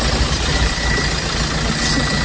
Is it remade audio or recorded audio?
recorded